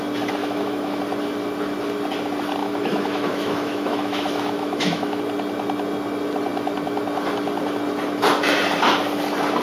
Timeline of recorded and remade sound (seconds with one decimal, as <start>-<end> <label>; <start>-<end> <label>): 0.0-0.4 recorded; 0.4-1.0 remade; 1.0-2.6 recorded; 2.6-5.2 remade; 5.2-9.6 recorded